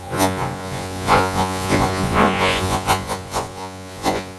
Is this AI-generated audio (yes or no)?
yes